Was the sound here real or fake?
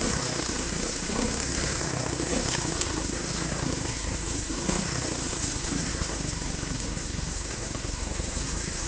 fake